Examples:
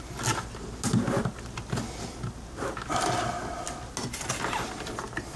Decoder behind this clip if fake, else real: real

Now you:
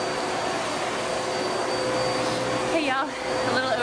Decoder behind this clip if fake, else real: real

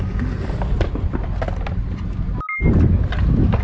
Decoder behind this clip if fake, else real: real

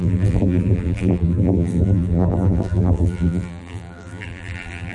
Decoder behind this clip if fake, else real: fake, vocoder, BigVGAN v2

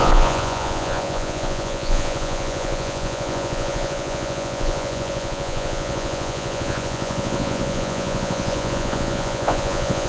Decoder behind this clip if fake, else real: fake, vocoder, Vocos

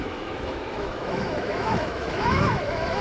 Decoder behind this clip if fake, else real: fake, autoencoder, DAC-VAE